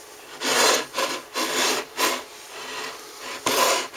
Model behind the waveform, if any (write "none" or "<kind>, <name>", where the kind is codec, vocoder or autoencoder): none